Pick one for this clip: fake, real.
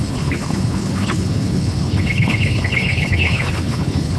fake